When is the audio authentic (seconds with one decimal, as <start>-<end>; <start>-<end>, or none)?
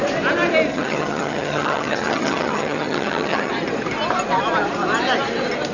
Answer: 0.0-0.7; 3.5-5.7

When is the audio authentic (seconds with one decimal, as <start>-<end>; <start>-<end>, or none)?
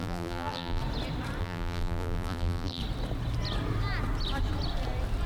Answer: 0.8-1.4; 2.8-5.3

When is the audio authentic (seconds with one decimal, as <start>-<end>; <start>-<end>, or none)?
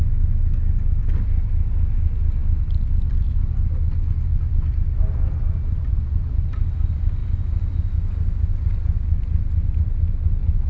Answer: 0.0-10.7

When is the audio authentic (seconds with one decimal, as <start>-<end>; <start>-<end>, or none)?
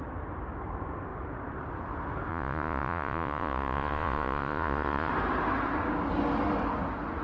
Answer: 0.0-2.3; 5.1-7.2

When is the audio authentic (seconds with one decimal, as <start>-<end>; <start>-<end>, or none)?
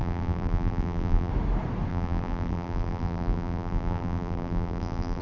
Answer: 1.3-1.9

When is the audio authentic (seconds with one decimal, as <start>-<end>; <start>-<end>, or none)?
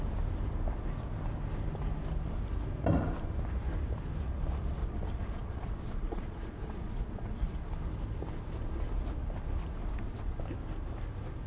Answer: 0.0-4.8; 7.7-9.8; 10.4-11.5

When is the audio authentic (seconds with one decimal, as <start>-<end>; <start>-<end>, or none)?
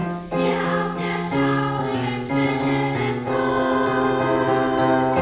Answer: 0.0-5.2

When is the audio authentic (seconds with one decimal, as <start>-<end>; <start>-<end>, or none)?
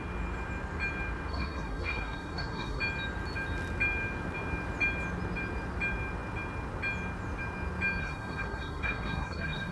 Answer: 0.0-1.3; 2.8-8.0